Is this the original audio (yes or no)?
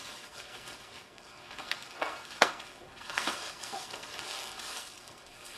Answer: no